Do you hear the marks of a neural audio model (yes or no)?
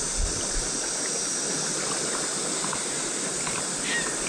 no